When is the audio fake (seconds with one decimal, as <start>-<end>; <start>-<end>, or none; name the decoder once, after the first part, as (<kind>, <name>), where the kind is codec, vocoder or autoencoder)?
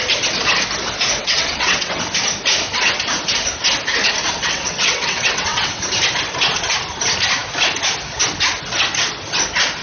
1.2-2.0 (vocoder, WaveNeXt); 4.4-5.8